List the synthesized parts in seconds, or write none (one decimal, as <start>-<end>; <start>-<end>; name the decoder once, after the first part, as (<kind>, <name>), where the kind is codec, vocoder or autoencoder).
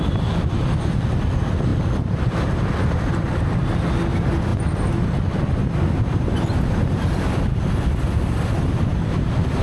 1.7-3.3 (vocoder, BigVGAN v2); 8.9-9.6